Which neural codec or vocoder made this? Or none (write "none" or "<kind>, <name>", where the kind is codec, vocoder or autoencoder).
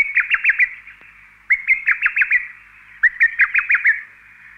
none